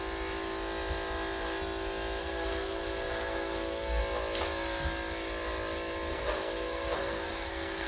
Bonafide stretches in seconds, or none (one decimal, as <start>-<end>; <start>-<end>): 0.0-2.2; 4.0-6.1